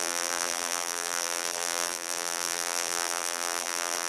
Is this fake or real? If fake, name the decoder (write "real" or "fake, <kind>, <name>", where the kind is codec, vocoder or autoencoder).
fake, vocoder, BigVGAN v2